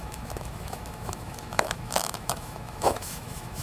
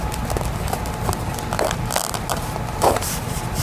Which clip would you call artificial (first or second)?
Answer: first